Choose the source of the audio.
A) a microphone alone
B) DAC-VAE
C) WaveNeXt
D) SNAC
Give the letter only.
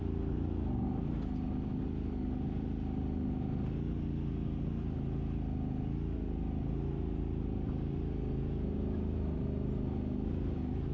A